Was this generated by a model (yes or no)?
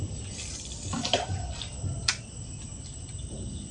no